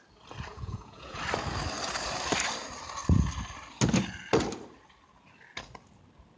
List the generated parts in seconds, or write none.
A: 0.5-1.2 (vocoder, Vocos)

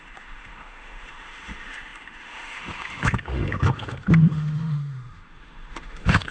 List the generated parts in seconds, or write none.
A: 0.0-6.3 (autoencoder, DAC-VAE)

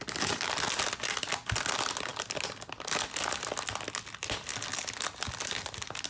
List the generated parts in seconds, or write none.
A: none

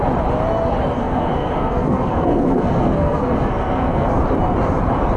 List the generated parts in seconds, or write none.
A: 1.0-4.1 (codec, SNAC)

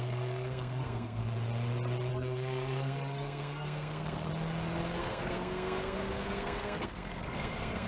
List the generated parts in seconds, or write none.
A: 0.0-1.2 (codec, SNAC); 2.1-4.3; 5.0-7.9

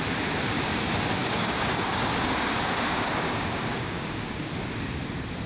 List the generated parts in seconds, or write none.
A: 1.2-4.5 (codec, DAC)